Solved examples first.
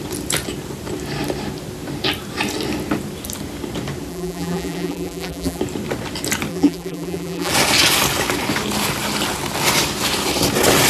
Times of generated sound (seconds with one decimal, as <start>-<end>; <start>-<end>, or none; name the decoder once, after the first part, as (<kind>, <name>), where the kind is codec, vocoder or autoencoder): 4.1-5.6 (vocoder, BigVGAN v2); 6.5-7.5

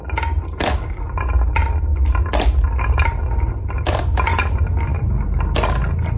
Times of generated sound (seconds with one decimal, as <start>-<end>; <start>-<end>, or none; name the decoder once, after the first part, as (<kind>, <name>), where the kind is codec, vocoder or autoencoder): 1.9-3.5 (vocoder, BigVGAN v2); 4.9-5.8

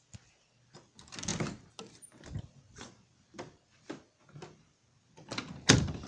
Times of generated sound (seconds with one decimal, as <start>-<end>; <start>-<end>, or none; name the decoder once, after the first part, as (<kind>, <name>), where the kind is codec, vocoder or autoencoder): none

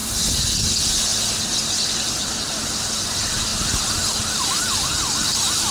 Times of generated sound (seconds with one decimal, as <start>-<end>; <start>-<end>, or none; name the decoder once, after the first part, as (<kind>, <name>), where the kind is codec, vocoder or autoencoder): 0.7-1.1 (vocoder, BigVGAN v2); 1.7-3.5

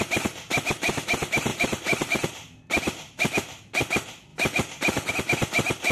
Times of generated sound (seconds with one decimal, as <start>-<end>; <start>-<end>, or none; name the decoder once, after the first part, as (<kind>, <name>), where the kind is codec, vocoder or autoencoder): 1.5-3.2 (vocoder, BigVGAN v2); 4.3-5.1